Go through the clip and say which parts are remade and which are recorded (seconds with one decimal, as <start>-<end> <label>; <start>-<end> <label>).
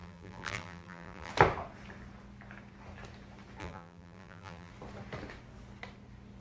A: 0.0-1.3 remade; 1.3-3.6 recorded; 3.6-4.7 remade; 4.7-6.4 recorded